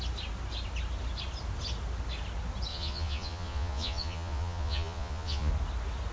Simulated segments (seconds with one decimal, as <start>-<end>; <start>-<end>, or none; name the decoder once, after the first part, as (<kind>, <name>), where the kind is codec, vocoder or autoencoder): 2.7-5.5 (vocoder, Vocos)